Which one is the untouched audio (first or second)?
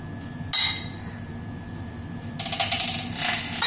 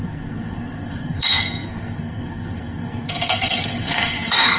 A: first